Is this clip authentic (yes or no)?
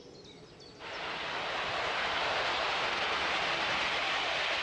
yes